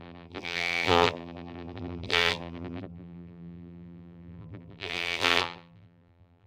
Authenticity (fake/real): fake